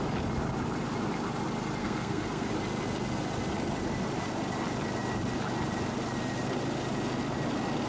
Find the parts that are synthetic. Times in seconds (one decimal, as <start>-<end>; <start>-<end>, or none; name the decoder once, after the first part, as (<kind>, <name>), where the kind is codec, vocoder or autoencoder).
1.8-2.5 (codec, SNAC)